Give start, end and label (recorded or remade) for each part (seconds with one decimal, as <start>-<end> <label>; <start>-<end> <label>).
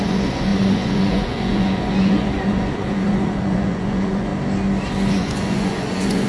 0.0-4.3 remade; 4.3-5.1 recorded; 5.1-6.3 remade